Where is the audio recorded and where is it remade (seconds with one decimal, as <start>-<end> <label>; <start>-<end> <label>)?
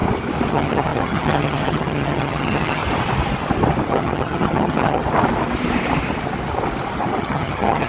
0.0-0.5 recorded; 0.5-2.8 remade; 2.8-3.9 recorded; 3.9-5.0 remade; 5.0-7.2 recorded; 7.2-7.9 remade